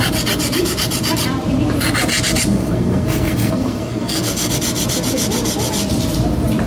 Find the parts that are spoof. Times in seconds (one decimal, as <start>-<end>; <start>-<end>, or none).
2.5-4.5

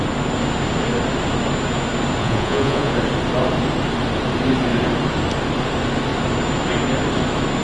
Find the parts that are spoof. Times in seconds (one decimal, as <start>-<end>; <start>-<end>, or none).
2.2-2.9